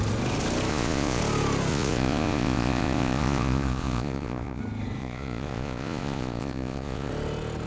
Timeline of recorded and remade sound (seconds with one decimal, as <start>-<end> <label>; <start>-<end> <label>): 0.0-0.7 recorded; 0.7-1.2 remade; 1.2-1.7 recorded; 1.7-4.6 remade; 4.6-5.0 recorded; 5.0-7.1 remade; 7.1-7.7 recorded